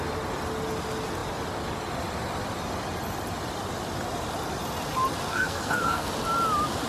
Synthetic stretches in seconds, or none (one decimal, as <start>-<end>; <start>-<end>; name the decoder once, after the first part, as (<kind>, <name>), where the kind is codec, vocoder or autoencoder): 5.3-6.1 (codec, SNAC)